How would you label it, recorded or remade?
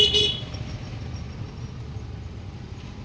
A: recorded